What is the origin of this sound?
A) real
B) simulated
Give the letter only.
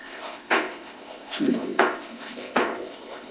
B